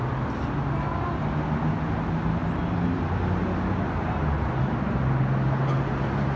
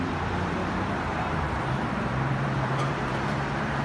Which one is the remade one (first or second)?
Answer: second